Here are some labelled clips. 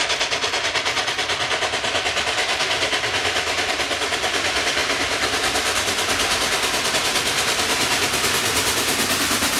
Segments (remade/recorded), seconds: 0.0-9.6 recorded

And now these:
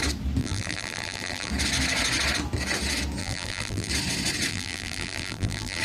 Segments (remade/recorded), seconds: 0.0-0.4 recorded; 0.4-1.5 remade; 1.5-3.2 recorded; 3.2-3.9 remade; 3.9-4.5 recorded; 4.5-5.8 remade